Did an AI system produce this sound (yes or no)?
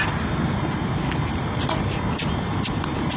no